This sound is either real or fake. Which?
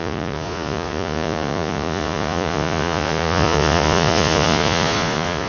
fake